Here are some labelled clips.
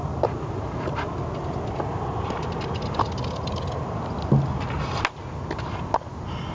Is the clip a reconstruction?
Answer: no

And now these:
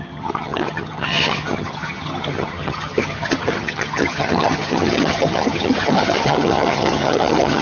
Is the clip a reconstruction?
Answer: yes